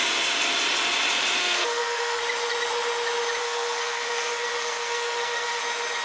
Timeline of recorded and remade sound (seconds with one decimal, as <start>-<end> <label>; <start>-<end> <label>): 0.0-1.4 recorded; 1.4-2.2 remade; 2.2-3.4 recorded; 3.4-5.6 remade; 5.6-6.0 recorded